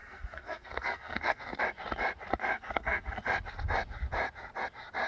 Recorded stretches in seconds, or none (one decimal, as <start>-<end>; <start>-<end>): 1.6-2.5; 3.2-5.1